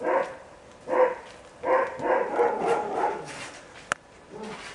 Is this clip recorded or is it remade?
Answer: recorded